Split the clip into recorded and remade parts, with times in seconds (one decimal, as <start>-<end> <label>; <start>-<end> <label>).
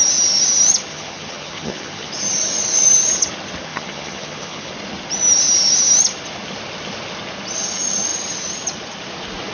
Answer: 0.0-0.9 recorded; 0.9-2.1 remade; 2.1-3.7 recorded; 3.7-4.7 remade; 4.7-9.5 recorded